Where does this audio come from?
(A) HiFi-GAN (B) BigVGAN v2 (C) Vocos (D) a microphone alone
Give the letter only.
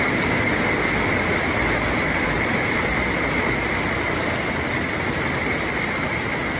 D